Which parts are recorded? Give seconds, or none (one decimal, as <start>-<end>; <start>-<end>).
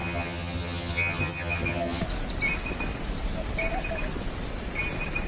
2.0-5.3